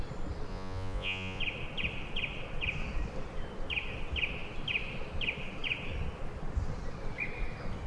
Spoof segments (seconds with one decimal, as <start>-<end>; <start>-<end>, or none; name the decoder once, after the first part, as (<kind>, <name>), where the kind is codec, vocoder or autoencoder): 0.5-1.4 (vocoder, Vocos)